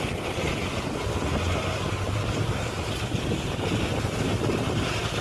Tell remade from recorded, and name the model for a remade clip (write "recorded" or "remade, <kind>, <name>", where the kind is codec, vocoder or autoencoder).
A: recorded